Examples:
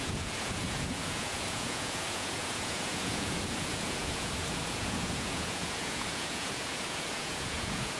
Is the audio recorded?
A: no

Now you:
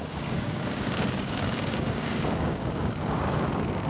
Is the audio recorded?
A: no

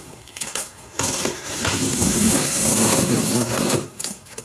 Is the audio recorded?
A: no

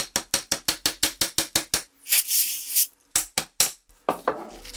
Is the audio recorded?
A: yes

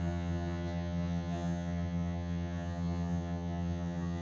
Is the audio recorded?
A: no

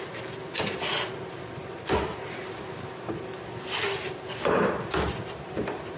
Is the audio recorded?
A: yes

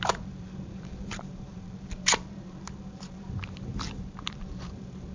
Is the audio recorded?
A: no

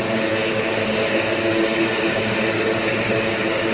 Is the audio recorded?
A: no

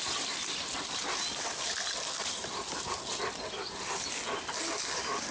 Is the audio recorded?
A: yes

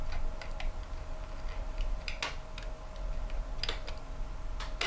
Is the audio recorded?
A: yes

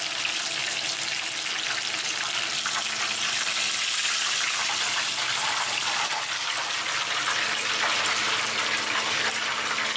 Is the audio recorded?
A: yes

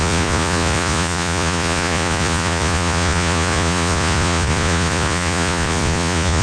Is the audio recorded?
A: no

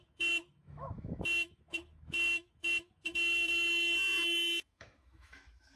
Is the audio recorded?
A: no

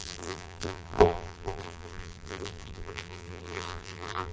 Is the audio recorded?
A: no